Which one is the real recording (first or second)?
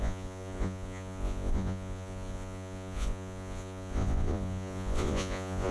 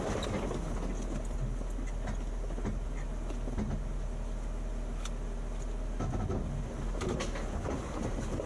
second